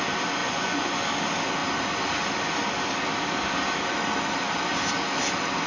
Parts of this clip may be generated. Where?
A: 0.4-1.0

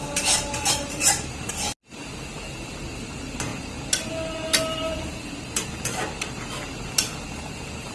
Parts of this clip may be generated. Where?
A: 0.0-1.5